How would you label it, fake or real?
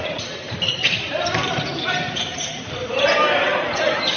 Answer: fake